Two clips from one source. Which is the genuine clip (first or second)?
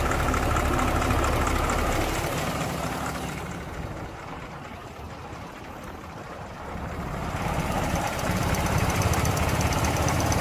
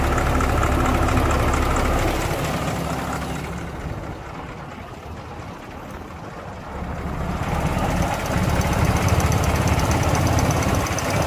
second